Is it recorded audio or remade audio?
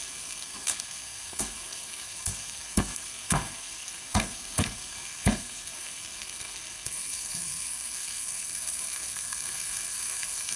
remade